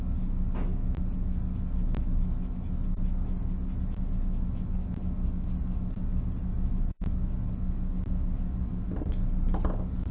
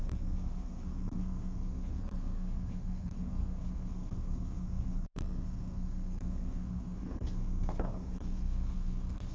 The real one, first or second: first